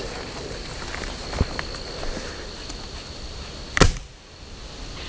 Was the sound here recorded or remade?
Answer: recorded